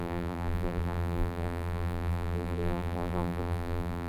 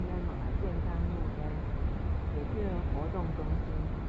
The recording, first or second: second